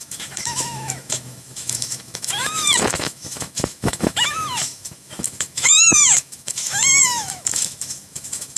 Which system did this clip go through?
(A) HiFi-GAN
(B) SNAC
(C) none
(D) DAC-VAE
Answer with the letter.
D